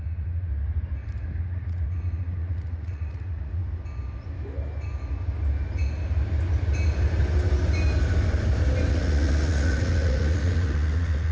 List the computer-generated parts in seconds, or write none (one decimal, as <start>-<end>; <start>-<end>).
0.0-0.5; 1.4-3.6; 8.9-11.3